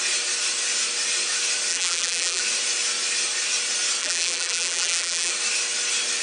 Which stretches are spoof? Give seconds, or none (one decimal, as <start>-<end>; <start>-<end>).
1.7-2.4; 4.0-5.3